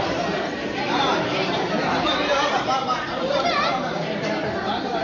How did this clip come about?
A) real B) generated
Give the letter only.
B